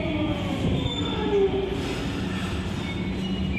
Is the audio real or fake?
real